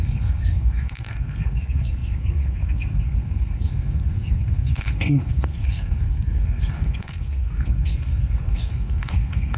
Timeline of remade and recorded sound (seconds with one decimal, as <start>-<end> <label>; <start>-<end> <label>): 0.0-9.6 remade